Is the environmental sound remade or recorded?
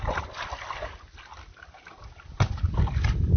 recorded